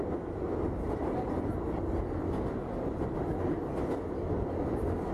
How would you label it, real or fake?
real